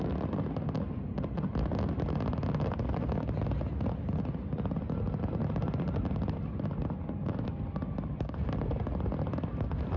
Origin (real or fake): real